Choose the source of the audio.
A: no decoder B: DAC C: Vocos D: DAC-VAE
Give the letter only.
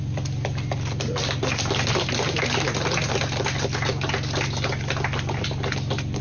A